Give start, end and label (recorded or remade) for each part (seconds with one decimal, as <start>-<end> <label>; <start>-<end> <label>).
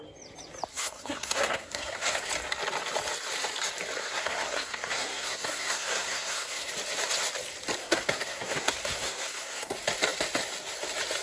0.0-0.7 recorded; 0.7-2.3 remade; 2.3-4.0 recorded; 4.0-6.7 remade; 6.7-7.8 recorded; 7.8-9.7 remade; 9.7-11.2 recorded